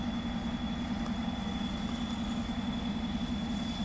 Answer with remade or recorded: recorded